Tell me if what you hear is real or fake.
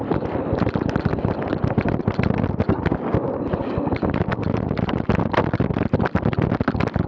fake